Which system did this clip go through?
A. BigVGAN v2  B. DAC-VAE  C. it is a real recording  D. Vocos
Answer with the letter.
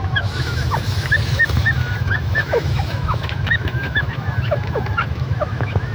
B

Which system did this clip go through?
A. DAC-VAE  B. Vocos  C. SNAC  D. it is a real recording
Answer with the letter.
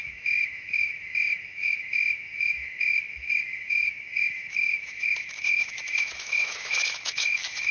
A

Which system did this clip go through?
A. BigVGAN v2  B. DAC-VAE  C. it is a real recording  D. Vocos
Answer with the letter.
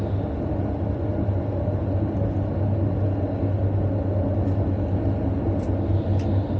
C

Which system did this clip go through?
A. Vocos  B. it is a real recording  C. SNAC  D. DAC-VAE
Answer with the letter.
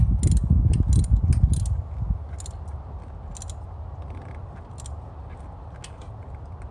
B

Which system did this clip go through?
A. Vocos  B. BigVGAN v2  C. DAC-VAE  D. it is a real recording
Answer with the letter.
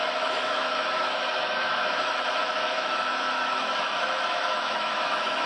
C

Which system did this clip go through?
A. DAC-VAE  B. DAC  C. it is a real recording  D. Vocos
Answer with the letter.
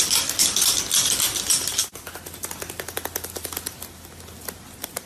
C